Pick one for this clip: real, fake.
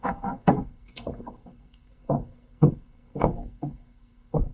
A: fake